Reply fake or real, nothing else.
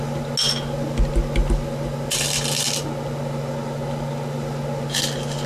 real